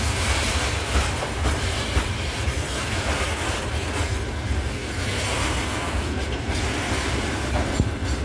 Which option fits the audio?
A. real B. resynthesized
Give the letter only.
A